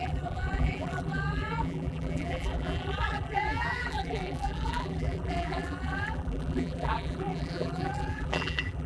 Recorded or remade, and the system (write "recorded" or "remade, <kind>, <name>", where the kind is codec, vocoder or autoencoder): remade, vocoder, BigVGAN v2